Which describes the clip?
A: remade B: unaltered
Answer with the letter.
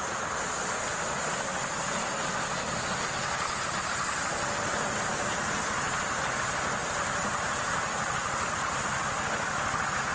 B